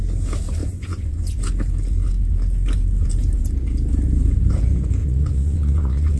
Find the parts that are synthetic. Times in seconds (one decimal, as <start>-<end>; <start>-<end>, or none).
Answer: 0.6-1.4; 5.0-6.2